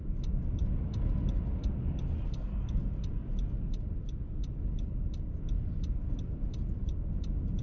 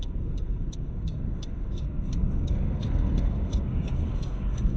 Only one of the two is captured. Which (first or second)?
first